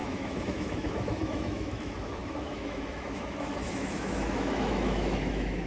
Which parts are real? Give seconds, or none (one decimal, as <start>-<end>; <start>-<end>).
none